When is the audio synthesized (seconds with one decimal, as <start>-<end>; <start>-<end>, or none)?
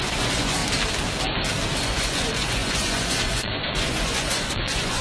0.0-0.6; 1.8-5.0